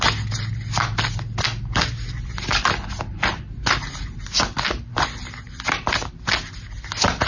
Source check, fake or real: real